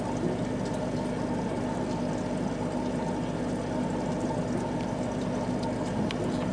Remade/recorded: recorded